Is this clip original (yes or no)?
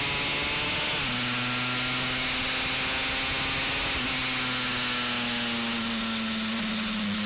yes